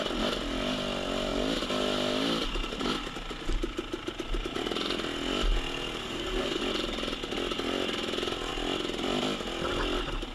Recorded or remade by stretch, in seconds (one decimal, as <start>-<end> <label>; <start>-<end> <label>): 0.0-6.0 recorded; 6.0-6.6 remade; 6.6-10.3 recorded